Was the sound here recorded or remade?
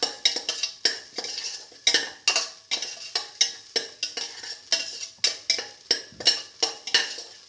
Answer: recorded